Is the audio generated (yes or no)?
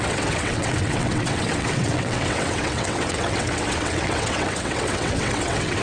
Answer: yes